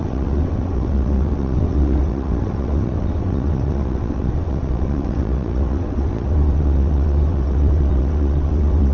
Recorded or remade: remade